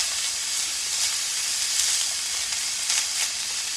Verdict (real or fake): real